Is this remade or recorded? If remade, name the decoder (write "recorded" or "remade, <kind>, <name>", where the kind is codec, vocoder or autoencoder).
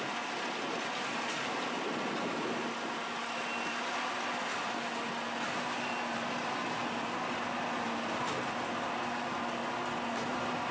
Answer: recorded